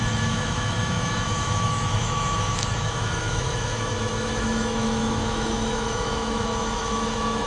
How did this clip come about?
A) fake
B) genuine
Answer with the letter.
A